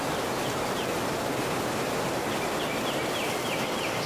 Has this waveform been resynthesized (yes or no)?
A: no